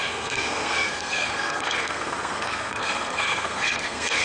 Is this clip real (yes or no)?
no